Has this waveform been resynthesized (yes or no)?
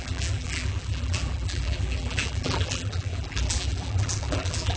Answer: yes